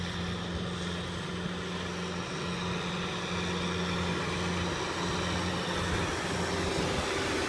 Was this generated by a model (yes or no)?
no